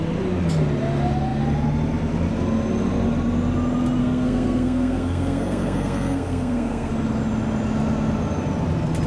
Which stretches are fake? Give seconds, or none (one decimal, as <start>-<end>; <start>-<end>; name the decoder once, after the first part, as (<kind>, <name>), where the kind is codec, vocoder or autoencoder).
4.0-6.9 (codec, SNAC)